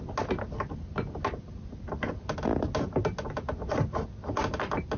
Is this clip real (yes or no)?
yes